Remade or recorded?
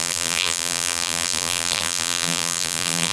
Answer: remade